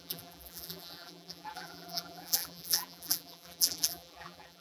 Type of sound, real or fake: fake